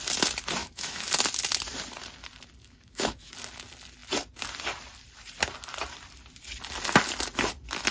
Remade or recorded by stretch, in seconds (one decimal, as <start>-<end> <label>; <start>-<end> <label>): 0.0-0.6 recorded; 0.6-1.1 remade; 1.1-2.6 recorded; 2.6-3.3 remade; 3.3-7.9 recorded